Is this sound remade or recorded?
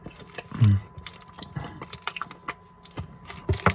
recorded